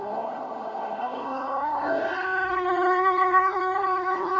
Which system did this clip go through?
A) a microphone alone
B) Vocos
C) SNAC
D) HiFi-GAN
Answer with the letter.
C